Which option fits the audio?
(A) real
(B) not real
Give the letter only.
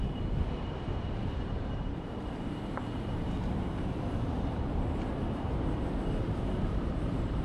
B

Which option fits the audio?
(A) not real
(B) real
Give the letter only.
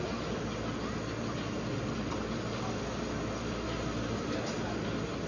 B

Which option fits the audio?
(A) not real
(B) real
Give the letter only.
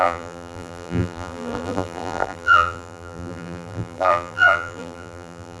A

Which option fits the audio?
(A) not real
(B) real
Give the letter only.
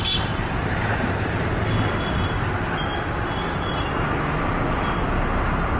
B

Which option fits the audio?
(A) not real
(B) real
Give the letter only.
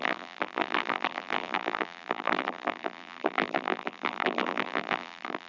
A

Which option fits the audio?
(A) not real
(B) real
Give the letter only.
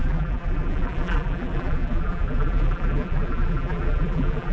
A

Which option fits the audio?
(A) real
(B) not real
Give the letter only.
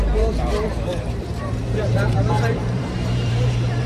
B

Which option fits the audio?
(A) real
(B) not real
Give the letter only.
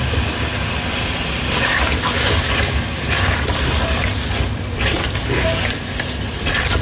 B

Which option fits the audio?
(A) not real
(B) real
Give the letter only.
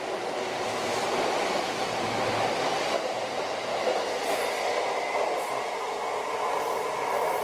B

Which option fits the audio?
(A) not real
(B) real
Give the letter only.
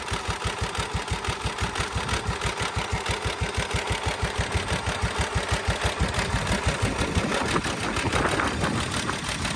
B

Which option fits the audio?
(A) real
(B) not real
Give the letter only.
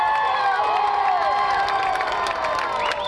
A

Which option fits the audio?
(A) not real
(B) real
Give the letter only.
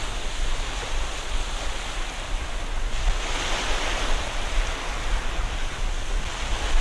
B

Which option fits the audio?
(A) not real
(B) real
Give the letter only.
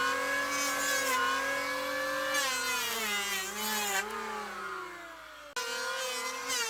B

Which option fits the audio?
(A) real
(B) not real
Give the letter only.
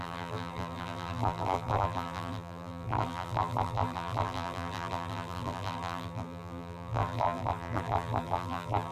B